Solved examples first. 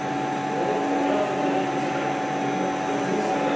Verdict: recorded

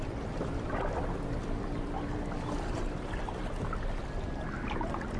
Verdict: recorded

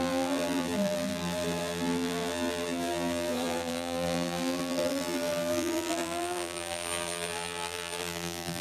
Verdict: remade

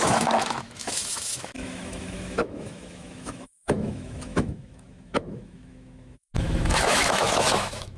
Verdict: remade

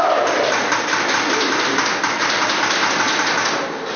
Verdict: recorded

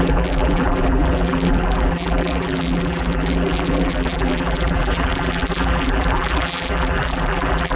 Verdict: remade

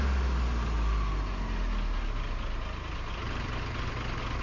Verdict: recorded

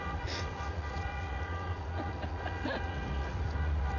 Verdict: remade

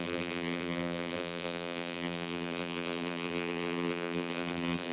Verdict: remade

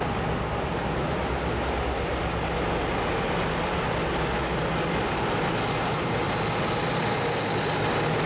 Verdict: recorded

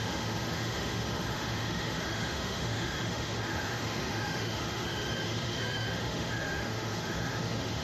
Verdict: remade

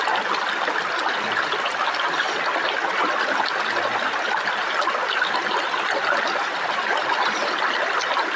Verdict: recorded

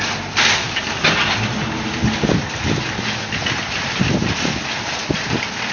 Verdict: recorded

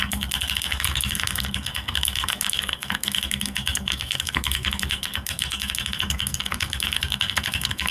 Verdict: remade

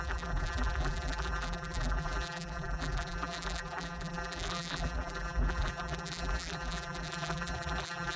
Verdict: remade